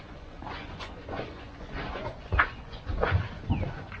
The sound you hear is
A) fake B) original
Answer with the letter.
A